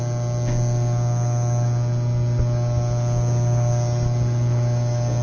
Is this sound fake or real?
real